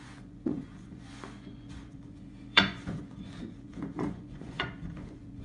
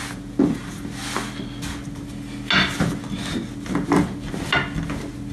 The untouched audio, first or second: second